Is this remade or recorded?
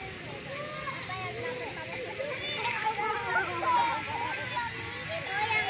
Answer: recorded